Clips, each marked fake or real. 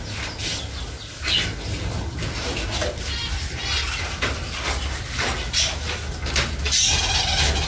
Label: real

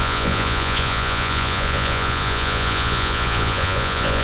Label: fake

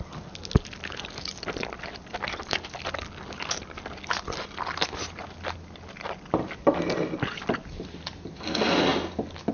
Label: real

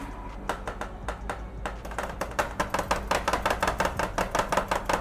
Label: real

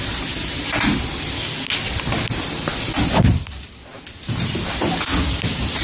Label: real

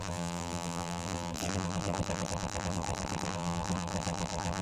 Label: fake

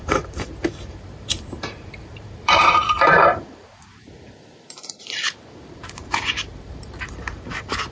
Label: fake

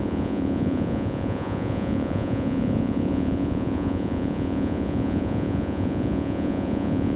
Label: fake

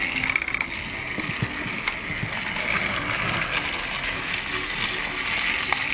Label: real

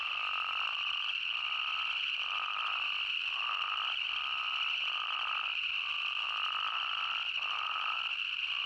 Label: real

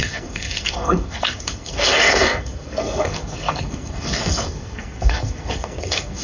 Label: fake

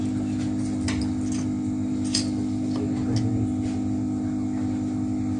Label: real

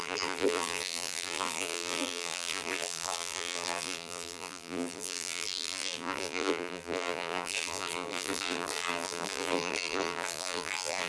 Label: fake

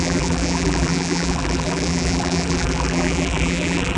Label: fake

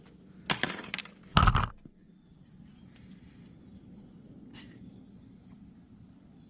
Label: real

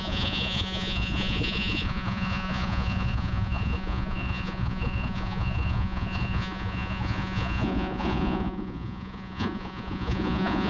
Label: fake